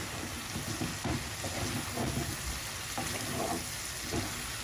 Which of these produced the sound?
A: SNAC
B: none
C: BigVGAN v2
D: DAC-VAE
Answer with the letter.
B